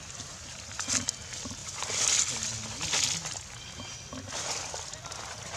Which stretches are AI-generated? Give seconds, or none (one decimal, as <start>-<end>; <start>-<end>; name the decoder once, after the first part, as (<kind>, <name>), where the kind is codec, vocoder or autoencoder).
none